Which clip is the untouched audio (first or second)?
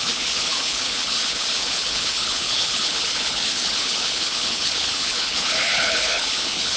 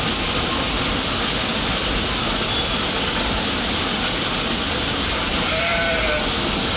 second